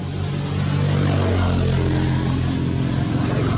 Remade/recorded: recorded